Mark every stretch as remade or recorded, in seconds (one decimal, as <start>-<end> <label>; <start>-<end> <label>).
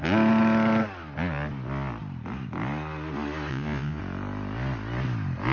0.0-3.5 recorded; 3.5-4.0 remade; 4.0-5.5 recorded